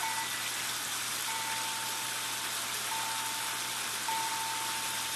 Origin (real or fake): real